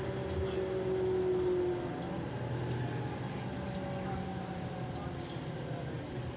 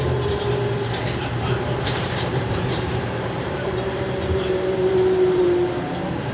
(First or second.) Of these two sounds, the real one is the first